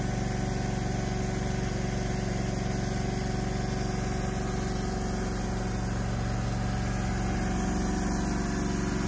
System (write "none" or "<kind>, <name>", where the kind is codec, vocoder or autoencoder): none